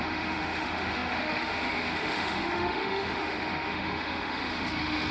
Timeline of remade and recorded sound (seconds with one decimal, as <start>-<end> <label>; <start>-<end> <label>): 0.0-5.1 remade